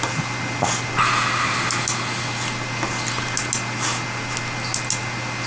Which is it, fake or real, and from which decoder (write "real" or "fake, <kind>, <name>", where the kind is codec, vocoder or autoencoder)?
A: real